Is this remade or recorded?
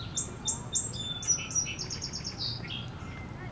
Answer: recorded